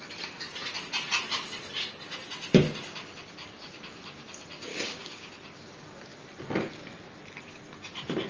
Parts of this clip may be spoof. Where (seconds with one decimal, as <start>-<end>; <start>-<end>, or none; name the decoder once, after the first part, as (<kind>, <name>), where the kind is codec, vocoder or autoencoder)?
4.7-5.3 (codec, DAC)